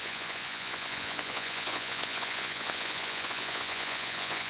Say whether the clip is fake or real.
fake